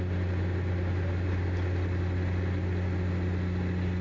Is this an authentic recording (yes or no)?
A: yes